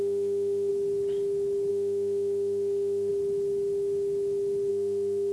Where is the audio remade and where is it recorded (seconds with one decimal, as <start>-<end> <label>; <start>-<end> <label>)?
0.0-0.7 remade; 0.7-1.7 recorded; 1.7-3.1 remade; 3.1-4.7 recorded; 4.7-5.3 remade